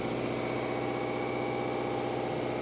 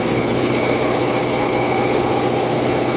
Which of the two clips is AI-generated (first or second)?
second